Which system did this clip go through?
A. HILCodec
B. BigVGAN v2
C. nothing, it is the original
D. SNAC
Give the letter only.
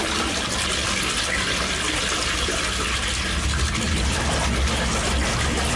C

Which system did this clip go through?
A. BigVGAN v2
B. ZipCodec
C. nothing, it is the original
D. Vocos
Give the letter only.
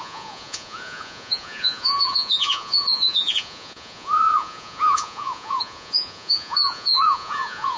D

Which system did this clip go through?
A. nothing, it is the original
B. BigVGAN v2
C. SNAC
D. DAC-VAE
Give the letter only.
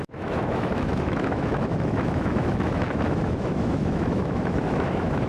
D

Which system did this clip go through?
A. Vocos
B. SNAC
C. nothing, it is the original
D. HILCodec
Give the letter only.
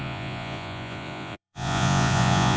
A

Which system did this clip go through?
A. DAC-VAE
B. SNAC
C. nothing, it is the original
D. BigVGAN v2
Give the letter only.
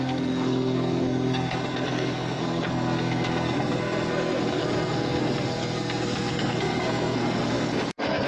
B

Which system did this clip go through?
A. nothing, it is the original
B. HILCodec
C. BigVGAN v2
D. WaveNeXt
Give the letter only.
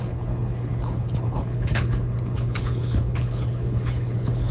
B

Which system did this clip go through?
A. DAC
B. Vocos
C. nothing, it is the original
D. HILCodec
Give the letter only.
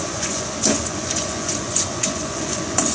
B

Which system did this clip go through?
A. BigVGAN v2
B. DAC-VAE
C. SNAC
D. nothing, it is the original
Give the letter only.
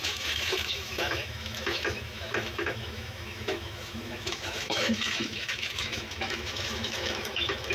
B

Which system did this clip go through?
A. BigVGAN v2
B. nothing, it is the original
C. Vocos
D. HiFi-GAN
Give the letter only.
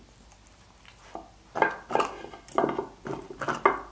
B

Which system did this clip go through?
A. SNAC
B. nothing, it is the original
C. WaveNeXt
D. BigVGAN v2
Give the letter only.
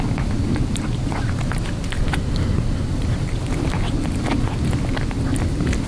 B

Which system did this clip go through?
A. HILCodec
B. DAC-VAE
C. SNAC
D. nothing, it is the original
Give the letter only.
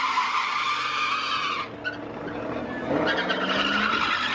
D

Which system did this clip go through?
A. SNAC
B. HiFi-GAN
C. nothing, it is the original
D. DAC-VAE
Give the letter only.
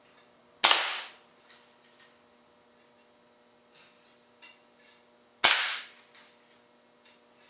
C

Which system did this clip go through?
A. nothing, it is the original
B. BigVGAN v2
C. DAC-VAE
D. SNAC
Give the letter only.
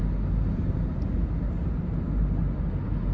A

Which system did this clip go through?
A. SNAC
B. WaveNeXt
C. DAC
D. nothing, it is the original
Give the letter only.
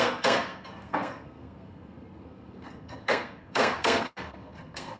A